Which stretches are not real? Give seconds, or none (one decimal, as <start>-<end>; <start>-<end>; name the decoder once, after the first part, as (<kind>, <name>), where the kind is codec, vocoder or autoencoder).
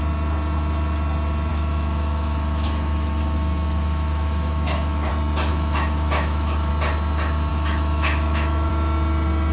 1.5-5.1 (autoencoder, DAC-VAE); 5.5-6.7; 7.5-8.7